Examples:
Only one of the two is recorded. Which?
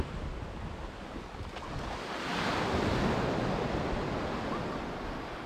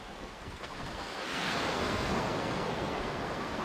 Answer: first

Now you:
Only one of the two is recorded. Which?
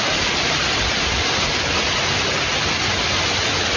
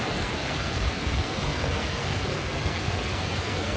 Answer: first